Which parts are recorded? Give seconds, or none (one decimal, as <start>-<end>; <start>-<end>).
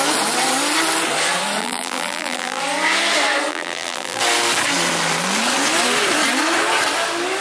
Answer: 0.0-1.6; 2.6-3.5; 4.2-7.4